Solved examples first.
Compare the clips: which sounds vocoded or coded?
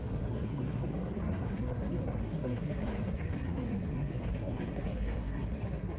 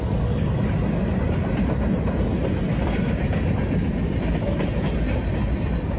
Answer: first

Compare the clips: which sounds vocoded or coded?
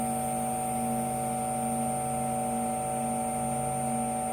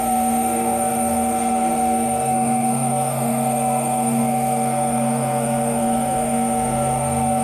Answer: second